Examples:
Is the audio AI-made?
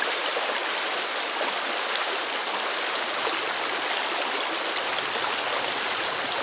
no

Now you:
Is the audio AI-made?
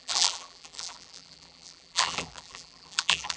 yes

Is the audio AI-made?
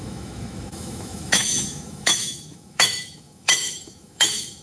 yes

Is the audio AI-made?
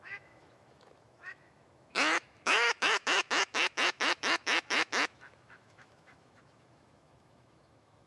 yes